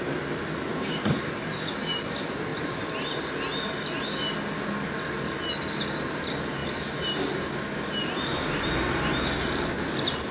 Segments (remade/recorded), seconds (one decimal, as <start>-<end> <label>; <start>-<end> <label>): 0.0-0.7 recorded; 0.7-1.3 remade; 1.3-10.3 recorded